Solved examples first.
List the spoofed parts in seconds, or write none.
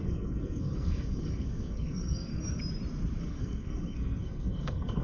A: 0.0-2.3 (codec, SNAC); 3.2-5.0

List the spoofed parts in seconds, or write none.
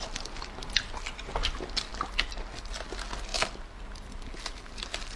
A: none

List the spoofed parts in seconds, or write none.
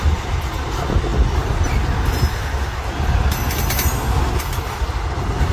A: none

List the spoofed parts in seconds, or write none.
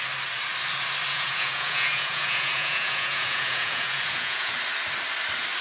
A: 1.1-4.5 (vocoder, Vocos)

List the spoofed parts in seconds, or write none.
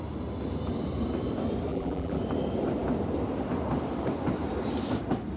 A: 1.7-2.2 (vocoder, BigVGAN v2)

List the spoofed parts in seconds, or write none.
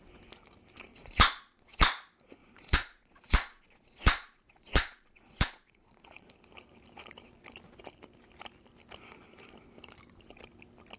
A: 0.9-1.8 (vocoder, Vocos); 2.4-6.3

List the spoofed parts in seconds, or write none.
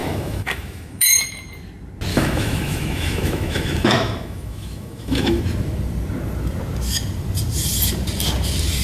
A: 0.0-1.2 (autoencoder, DAC-VAE); 2.1-5.4